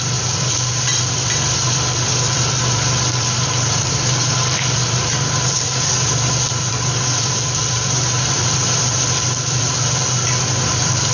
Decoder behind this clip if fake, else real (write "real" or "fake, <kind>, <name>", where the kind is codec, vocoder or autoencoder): fake, vocoder, BigVGAN v2